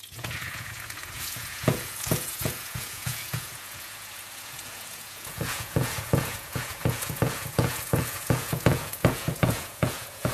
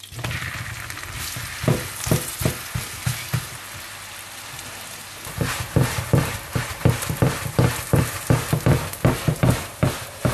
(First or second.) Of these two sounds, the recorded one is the second